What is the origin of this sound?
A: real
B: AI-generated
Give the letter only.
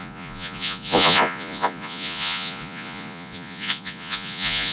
B